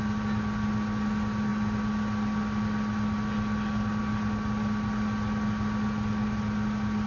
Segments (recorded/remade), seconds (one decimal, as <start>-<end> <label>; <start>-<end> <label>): 0.0-7.1 recorded